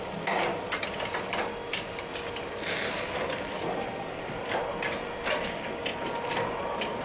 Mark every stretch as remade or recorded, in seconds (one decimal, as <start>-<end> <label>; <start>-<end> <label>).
0.0-7.0 recorded